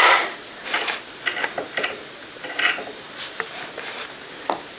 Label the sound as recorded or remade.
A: recorded